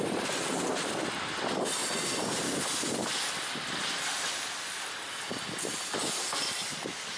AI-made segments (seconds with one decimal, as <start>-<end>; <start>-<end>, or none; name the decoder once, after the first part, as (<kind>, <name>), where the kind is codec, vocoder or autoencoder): none